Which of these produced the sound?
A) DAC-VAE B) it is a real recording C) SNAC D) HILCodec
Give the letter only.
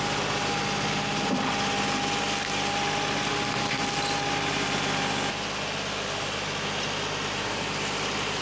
B